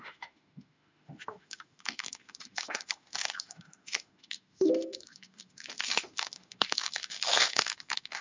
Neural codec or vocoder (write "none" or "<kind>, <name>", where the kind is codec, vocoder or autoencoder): autoencoder, DAC-VAE